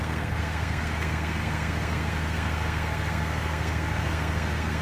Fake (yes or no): yes